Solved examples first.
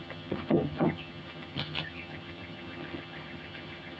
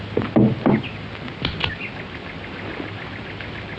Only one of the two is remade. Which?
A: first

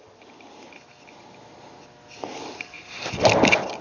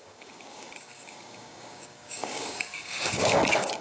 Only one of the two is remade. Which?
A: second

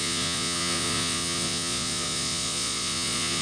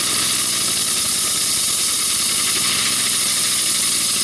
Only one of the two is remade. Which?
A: first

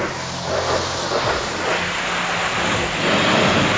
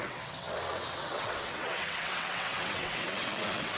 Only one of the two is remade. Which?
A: second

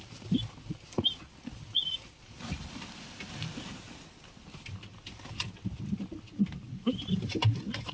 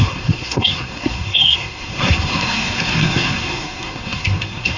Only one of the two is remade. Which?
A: second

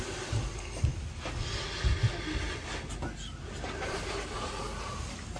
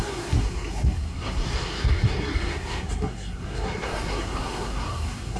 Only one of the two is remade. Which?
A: second